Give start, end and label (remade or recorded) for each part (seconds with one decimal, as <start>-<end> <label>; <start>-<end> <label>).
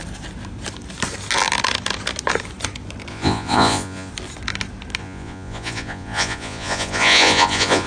0.0-3.1 recorded; 3.1-4.1 remade; 4.1-5.0 recorded; 5.0-7.9 remade